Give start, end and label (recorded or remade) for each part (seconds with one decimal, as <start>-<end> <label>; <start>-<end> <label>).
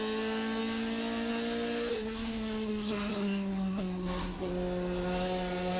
0.0-1.9 recorded; 1.9-4.5 remade; 4.5-5.8 recorded